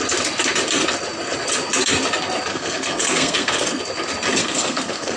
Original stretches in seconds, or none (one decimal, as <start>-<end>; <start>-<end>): 0.0-2.5; 3.8-4.4